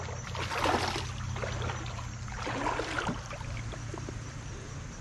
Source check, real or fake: real